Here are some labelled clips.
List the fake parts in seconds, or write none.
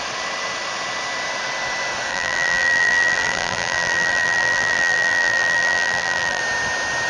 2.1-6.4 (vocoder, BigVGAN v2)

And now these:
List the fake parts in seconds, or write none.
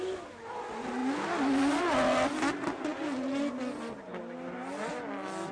none